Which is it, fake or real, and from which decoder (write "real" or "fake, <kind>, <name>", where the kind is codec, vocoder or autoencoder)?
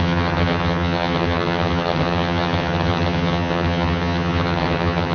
fake, vocoder, HiFi-GAN